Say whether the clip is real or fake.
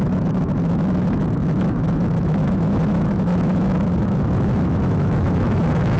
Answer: fake